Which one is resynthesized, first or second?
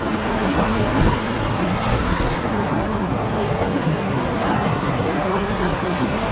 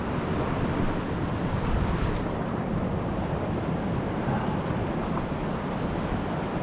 first